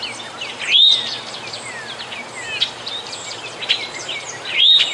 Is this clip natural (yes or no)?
yes